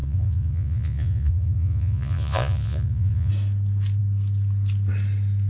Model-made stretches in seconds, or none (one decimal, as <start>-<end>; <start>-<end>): 0.0-3.3